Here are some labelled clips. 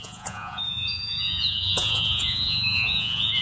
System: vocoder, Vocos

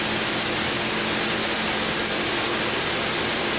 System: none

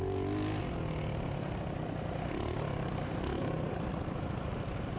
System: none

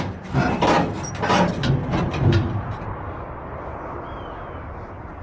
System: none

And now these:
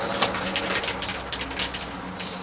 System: none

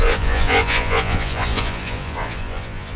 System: vocoder, Vocos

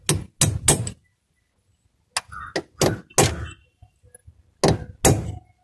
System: none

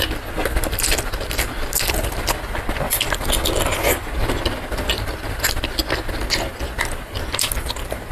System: none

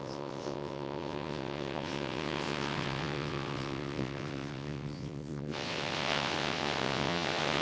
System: vocoder, WaveNeXt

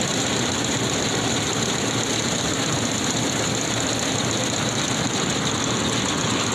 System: none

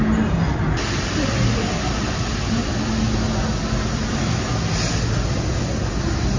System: none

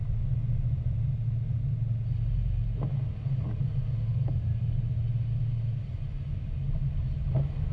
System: none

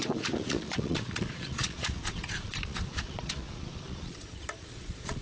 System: vocoder, Vocos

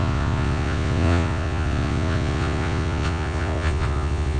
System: vocoder, Vocos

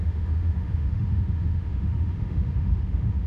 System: autoencoder, DAC-VAE